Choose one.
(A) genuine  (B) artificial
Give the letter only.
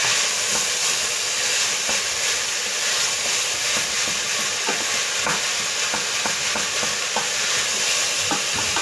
A